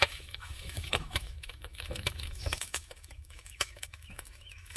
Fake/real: fake